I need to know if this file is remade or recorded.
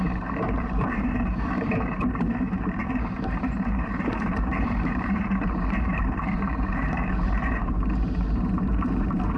remade